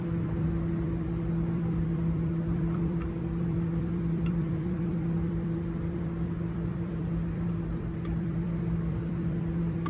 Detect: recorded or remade remade